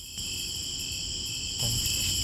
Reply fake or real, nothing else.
real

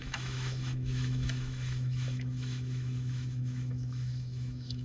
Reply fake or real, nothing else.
fake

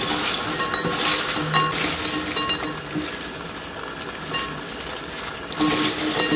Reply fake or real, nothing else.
real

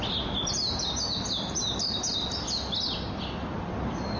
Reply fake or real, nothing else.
real